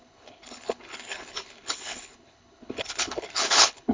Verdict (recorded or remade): remade